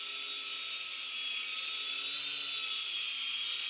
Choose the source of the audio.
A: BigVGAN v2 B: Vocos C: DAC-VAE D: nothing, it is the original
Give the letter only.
D